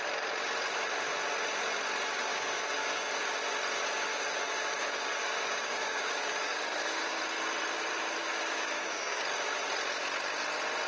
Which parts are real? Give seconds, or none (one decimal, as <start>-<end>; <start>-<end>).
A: 0.0-2.3; 3.2-4.1; 7.2-8.2; 9.2-10.9